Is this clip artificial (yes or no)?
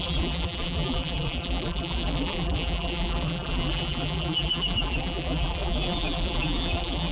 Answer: yes